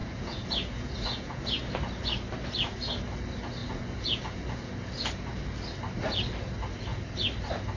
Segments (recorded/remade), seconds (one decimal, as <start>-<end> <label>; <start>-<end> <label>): 0.0-1.7 remade; 1.7-3.6 recorded; 3.6-5.1 remade; 5.1-7.8 recorded

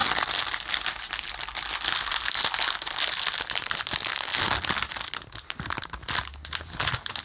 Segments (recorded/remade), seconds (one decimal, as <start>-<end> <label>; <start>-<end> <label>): 0.0-7.2 recorded

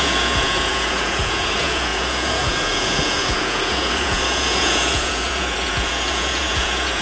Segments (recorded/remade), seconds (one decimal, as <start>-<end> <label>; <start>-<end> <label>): 0.0-7.0 remade

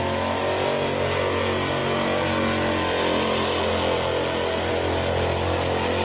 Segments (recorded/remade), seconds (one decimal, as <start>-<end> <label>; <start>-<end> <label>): 0.0-6.0 recorded

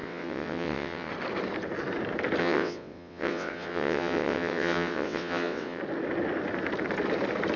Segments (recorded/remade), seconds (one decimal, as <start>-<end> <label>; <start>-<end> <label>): 0.0-1.1 remade; 1.1-2.4 recorded; 2.4-5.8 remade; 5.8-7.6 recorded

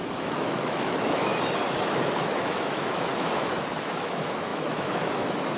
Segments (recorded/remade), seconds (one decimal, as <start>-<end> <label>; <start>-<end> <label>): 0.0-1.3 remade; 1.3-1.8 recorded; 1.8-5.6 remade